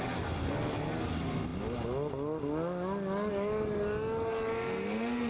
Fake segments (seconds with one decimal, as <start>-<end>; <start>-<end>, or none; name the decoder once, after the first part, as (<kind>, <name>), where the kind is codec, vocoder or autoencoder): none